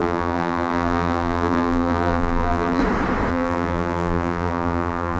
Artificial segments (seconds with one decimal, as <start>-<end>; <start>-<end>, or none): 0.0-2.8; 3.3-5.2